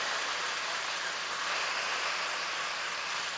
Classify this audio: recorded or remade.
remade